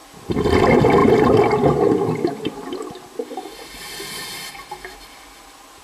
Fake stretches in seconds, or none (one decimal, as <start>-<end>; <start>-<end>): none